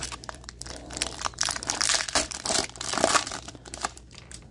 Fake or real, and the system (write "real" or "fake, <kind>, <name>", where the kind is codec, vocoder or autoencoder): fake, vocoder, BigVGAN v2